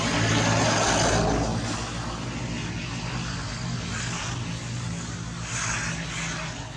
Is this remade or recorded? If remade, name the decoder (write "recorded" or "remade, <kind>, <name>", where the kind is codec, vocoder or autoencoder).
recorded